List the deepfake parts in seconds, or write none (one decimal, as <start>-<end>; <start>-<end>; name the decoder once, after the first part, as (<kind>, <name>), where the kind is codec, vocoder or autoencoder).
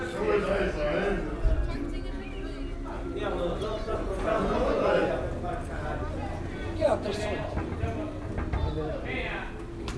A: 3.4-5.1 (vocoder, Vocos); 6.7-7.2